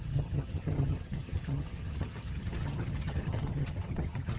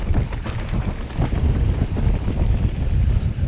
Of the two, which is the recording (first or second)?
second